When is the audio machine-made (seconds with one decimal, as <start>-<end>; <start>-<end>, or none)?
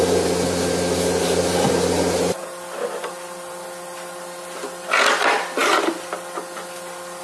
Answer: none